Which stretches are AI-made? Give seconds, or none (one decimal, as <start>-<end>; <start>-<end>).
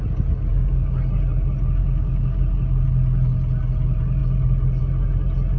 0.5-1.0; 1.8-2.4